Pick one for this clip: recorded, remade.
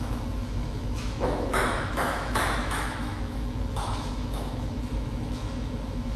remade